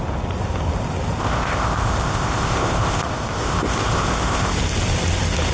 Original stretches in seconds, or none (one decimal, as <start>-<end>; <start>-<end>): 0.0-1.2; 4.5-5.5